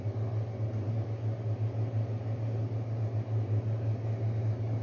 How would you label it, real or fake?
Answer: real